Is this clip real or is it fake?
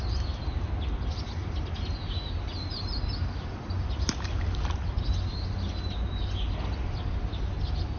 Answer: real